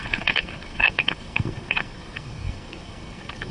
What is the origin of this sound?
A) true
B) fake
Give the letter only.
B